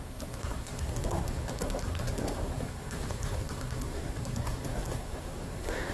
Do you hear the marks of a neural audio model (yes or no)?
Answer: yes